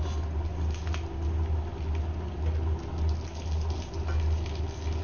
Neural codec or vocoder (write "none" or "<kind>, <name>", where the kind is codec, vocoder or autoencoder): none